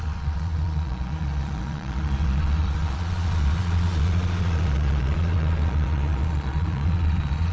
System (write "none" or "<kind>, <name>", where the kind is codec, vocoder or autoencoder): vocoder, Vocos